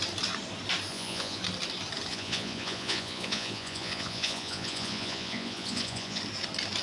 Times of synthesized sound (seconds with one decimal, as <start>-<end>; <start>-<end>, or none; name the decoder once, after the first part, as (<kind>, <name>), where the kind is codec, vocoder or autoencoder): 0.9-1.4 (vocoder, Vocos); 2.1-6.2

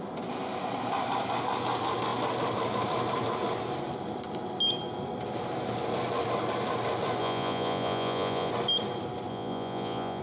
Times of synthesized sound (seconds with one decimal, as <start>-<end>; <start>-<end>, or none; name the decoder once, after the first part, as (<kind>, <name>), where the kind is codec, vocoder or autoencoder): 7.2-8.5 (vocoder, Vocos); 9.3-10.2

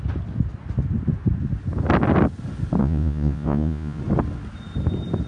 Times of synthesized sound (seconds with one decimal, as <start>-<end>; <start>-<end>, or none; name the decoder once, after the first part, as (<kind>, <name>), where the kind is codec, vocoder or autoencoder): 2.8-4.0 (vocoder, Vocos)